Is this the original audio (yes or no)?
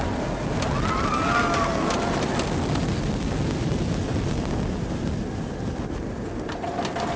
yes